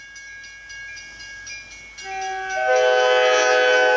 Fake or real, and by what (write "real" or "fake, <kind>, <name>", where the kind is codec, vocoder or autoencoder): real